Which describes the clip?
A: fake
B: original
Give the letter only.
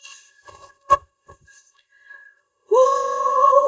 A